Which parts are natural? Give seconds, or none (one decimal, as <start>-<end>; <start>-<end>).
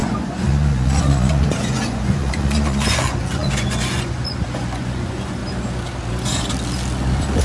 5.4-7.4